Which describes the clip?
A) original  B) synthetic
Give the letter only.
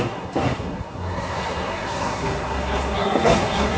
B